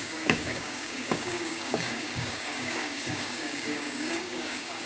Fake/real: fake